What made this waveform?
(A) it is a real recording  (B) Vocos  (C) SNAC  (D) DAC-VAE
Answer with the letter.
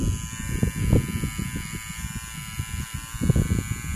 A